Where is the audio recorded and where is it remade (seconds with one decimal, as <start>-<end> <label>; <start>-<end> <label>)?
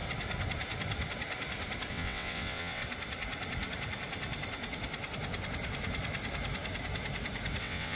0.0-1.9 recorded; 1.9-2.8 remade; 2.8-7.6 recorded; 7.6-8.0 remade